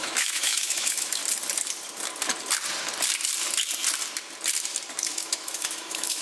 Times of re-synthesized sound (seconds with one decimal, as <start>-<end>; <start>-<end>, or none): 0.0-1.2; 4.9-6.2